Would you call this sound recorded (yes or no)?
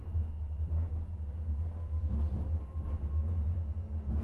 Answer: yes